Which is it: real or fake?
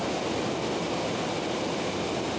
real